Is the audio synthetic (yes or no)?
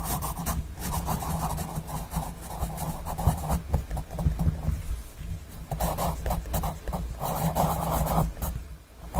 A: no